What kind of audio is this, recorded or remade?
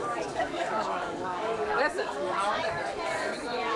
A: remade